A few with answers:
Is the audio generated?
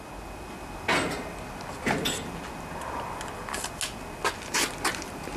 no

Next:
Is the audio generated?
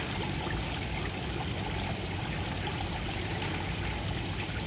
no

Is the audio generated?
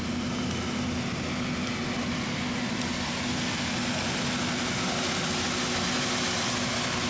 no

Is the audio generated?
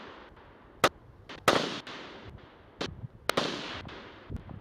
no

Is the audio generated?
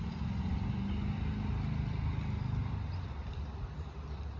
no